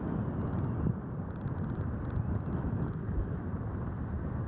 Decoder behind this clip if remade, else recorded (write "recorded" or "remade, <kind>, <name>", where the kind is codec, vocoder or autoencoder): recorded